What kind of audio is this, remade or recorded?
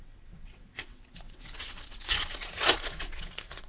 remade